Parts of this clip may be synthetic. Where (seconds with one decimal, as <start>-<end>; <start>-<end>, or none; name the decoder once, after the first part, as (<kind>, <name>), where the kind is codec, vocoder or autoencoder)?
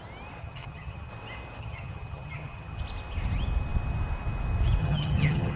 0.4-1.1 (vocoder, HiFi-GAN); 1.6-2.8; 4.8-5.6